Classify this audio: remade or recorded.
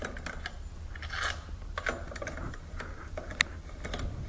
recorded